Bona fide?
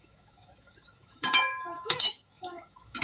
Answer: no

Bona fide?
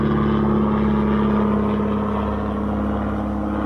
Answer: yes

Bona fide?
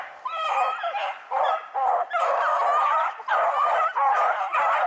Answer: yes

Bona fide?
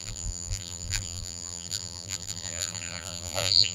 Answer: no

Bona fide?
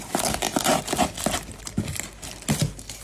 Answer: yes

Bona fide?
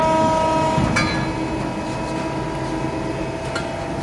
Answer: yes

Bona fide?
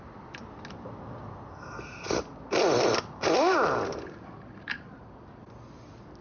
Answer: yes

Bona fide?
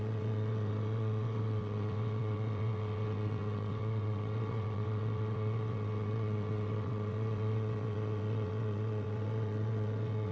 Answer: no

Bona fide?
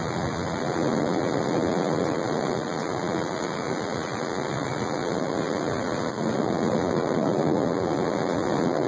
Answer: no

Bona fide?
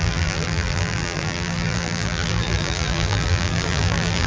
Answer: no